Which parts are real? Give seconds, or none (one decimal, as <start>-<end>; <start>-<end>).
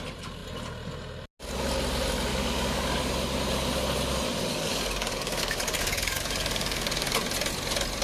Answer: 0.0-2.3; 3.0-4.5; 7.2-8.0